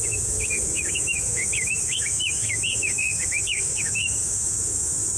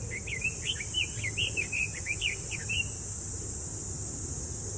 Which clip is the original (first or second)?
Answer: second